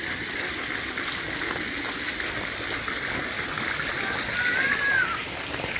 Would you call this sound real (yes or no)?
yes